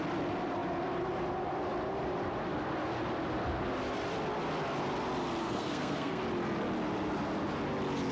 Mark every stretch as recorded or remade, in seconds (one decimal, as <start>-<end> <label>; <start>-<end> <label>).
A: 0.0-5.4 recorded; 5.4-6.2 remade; 6.2-8.1 recorded

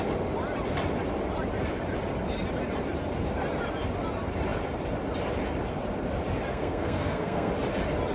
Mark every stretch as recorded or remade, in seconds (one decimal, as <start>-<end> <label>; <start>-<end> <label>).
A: 0.0-6.5 recorded; 6.5-7.5 remade; 7.5-8.1 recorded

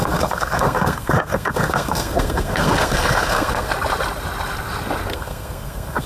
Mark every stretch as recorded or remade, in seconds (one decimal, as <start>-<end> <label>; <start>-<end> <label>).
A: 0.0-3.7 remade; 3.7-5.1 recorded; 5.1-6.1 remade

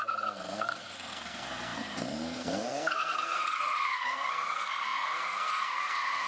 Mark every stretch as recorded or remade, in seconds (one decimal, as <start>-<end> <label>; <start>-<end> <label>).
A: 0.0-6.3 remade

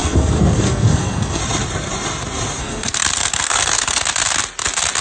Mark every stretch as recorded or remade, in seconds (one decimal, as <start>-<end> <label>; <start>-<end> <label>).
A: 0.0-1.4 remade; 1.4-2.6 recorded; 2.6-4.0 remade; 4.0-5.0 recorded